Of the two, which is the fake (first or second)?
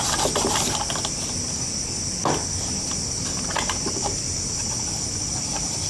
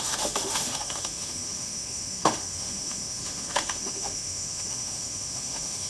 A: second